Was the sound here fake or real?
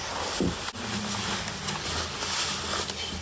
real